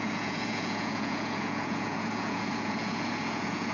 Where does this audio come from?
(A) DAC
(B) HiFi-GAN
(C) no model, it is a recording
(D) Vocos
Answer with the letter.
D